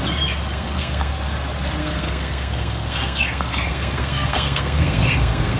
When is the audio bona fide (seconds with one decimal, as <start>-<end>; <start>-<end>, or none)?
0.0-0.5; 1.1-1.8